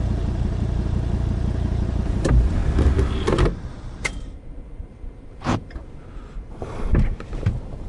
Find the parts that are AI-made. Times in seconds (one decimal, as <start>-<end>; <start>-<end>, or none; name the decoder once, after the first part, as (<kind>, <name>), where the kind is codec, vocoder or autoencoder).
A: 0.0-2.6 (vocoder, BigVGAN v2); 3.7-5.8; 6.5-7.9